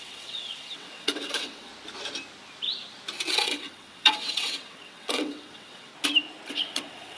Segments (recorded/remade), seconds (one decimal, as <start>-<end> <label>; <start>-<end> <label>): 0.0-1.7 remade; 1.7-3.3 recorded; 3.3-5.9 remade; 5.9-6.5 recorded; 6.5-7.2 remade